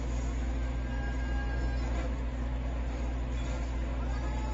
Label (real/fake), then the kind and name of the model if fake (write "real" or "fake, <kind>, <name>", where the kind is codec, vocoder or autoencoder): real